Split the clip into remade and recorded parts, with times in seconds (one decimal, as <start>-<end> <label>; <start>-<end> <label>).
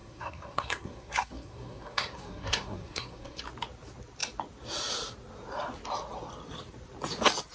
0.0-3.4 remade; 3.4-7.5 recorded